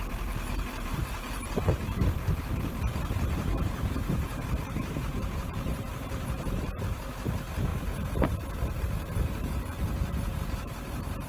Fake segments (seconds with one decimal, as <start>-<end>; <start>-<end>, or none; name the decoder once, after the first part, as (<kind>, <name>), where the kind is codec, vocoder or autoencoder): 0.0-7.7 (vocoder, BigVGAN v2); 8.8-11.3

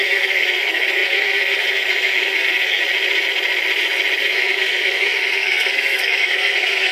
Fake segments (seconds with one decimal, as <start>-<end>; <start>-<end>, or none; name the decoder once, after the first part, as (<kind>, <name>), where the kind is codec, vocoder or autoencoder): 0.0-2.8 (codec, SNAC); 4.2-6.9

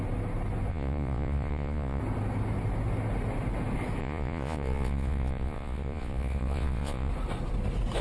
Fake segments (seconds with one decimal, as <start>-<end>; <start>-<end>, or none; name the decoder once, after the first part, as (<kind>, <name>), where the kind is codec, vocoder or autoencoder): 0.7-2.0 (vocoder, Vocos); 4.0-7.1

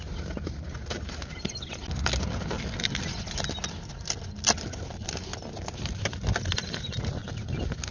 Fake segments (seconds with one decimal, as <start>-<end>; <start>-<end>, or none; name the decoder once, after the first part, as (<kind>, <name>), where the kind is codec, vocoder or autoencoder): none

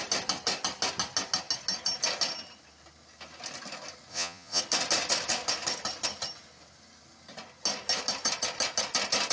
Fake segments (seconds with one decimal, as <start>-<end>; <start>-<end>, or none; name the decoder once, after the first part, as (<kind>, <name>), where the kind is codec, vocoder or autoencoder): 4.1-4.6 (vocoder, Vocos)

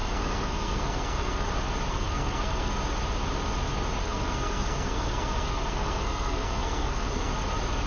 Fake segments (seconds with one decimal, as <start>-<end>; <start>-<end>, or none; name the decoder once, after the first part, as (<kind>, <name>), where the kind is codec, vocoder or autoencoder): 0.0-1.5 (codec, SNAC); 1.9-2.7; 4.0-7.3